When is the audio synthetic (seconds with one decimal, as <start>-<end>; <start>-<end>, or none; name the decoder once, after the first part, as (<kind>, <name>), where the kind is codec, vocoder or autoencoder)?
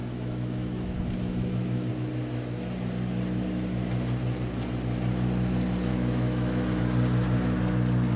0.0-1.9 (autoencoder, DAC-VAE); 5.9-6.8